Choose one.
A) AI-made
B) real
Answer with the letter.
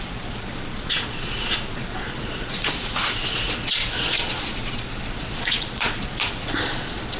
A